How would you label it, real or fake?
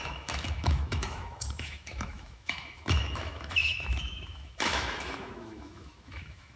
fake